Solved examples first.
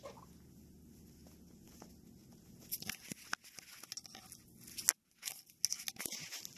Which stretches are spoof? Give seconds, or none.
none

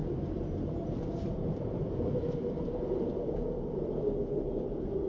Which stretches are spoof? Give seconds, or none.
0.0-3.1 (vocoder, BigVGAN v2)

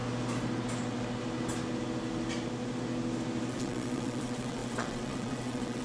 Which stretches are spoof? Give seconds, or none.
3.5-5.8 (vocoder, WaveNeXt)

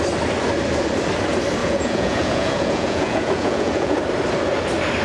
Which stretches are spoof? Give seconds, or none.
1.6-4.0 (vocoder, Vocos)

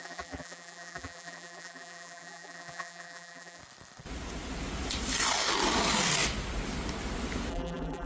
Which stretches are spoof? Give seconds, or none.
0.0-3.6 (vocoder, BigVGAN v2); 7.5-8.1